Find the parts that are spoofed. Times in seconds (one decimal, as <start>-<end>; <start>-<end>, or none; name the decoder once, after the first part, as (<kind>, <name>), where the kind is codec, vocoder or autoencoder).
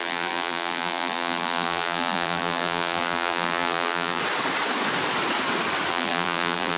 0.0-4.2 (vocoder, BigVGAN v2); 5.9-6.8